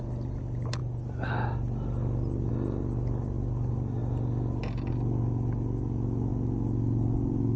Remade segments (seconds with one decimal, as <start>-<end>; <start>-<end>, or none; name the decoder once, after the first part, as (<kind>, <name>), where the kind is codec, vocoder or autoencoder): none